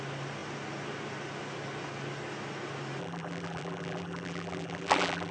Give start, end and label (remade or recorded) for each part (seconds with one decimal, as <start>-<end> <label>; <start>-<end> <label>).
0.0-3.0 recorded; 3.0-5.3 remade